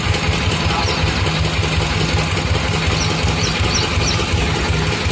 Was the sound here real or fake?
real